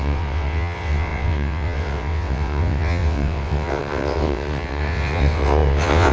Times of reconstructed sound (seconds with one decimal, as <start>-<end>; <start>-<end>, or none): 0.0-6.1